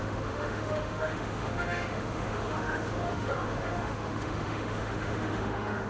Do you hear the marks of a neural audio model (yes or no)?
yes